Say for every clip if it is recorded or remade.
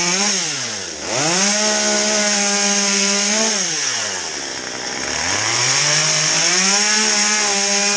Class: recorded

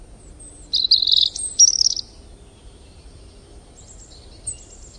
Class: recorded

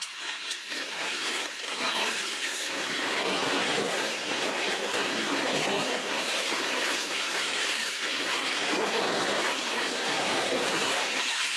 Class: remade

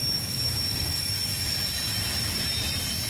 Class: recorded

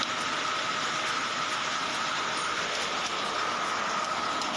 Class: recorded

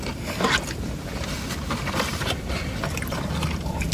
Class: remade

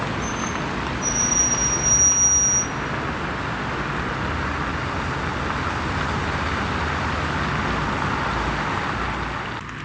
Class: recorded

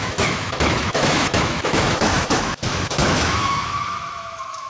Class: remade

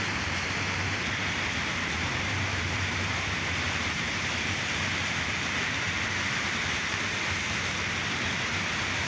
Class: remade